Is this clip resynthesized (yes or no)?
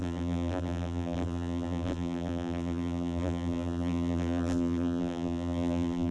yes